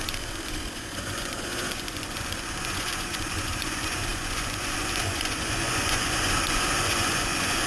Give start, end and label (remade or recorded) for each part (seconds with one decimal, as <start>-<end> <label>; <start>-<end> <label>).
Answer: 0.0-7.7 remade